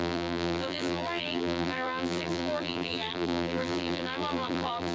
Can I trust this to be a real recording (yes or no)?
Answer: no